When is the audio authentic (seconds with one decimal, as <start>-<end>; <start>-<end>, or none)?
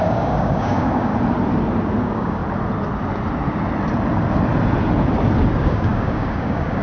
1.1-2.0; 2.4-5.5